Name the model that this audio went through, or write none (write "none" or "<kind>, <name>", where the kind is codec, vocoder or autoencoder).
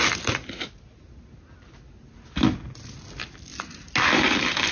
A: none